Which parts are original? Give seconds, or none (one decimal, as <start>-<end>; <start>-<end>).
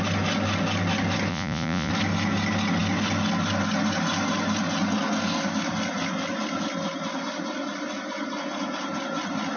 0.0-1.3; 1.9-9.6